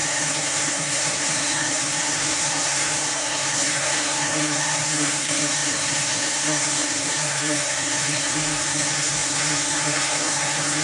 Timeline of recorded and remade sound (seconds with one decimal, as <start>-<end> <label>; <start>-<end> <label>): 0.0-10.8 remade